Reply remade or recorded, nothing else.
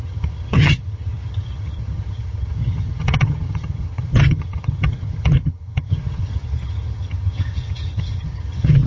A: remade